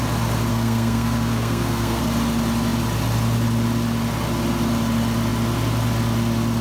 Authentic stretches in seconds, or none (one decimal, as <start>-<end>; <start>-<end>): 0.0-0.5; 2.0-6.6